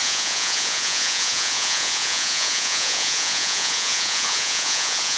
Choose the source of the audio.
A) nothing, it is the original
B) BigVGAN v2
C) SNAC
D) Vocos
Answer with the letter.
D